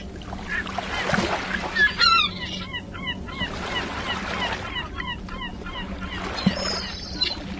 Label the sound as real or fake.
real